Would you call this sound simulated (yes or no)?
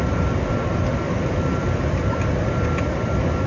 yes